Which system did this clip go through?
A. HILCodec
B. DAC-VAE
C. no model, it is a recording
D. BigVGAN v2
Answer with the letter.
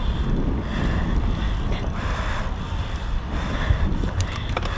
C